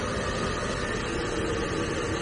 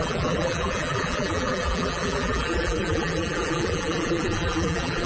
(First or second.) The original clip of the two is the first